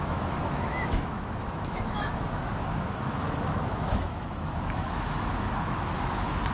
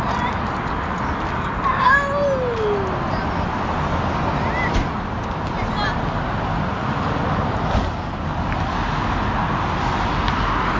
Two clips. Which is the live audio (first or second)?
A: second